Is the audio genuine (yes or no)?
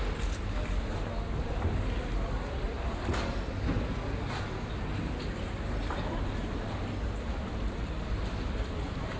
yes